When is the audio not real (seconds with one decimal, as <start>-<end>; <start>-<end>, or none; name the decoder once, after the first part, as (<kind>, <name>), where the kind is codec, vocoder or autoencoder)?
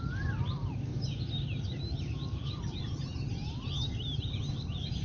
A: none